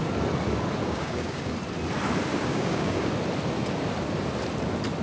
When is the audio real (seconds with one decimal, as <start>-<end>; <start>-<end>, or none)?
0.0-0.8; 1.5-2.3; 3.1-5.0